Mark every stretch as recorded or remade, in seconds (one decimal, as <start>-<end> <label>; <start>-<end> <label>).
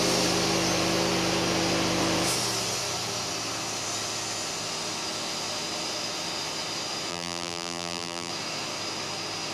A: 0.0-7.1 recorded; 7.1-8.3 remade; 8.3-9.5 recorded